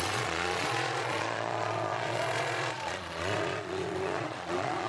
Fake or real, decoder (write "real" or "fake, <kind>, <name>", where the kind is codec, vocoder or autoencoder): fake, vocoder, Vocos